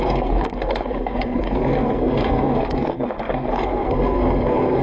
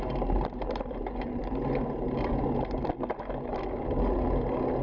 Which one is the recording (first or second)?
second